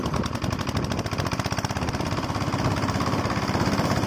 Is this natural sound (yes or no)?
yes